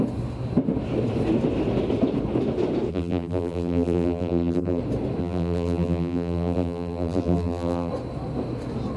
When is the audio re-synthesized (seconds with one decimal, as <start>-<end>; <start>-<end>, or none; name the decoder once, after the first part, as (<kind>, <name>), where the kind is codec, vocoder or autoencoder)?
2.9-4.8 (vocoder, BigVGAN v2); 5.2-7.9